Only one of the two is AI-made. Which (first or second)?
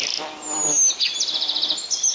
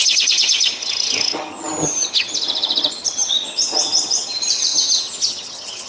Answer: second